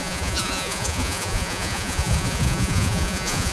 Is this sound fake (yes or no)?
yes